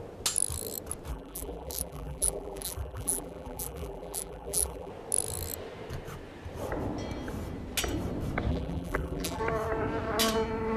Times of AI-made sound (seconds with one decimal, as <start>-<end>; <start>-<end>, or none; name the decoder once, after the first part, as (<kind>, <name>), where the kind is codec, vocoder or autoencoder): 1.1-4.9 (vocoder, BigVGAN v2); 8.5-9.4